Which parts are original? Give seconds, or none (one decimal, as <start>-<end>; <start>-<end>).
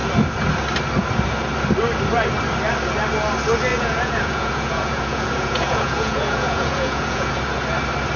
0.0-3.7; 7.3-8.2